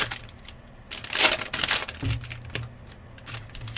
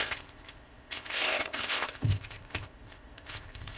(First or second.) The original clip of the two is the first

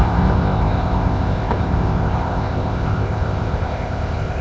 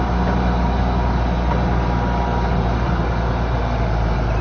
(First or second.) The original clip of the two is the second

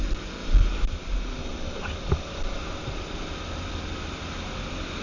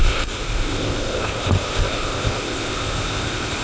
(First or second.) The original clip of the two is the first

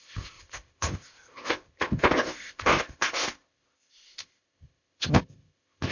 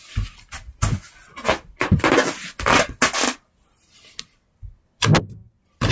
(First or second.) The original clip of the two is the second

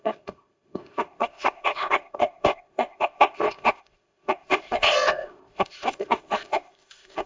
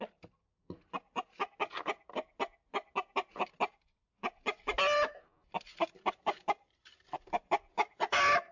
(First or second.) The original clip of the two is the second